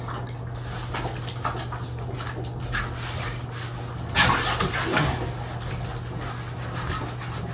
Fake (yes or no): no